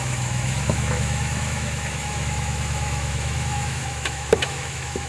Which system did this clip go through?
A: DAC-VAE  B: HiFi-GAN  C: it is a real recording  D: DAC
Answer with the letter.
A